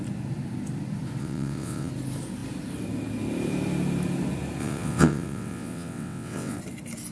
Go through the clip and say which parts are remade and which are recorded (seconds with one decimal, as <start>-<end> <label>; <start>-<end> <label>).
0.0-1.2 recorded; 1.2-1.9 remade; 1.9-4.6 recorded; 4.6-6.6 remade; 6.6-7.1 recorded